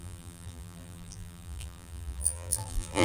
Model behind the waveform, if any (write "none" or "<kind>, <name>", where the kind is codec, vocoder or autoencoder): vocoder, BigVGAN v2